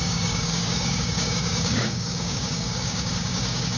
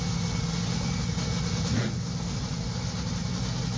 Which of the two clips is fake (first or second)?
first